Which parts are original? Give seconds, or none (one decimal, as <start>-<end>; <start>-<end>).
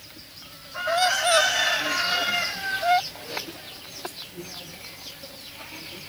0.0-6.1